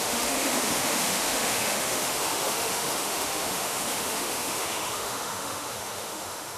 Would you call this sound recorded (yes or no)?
no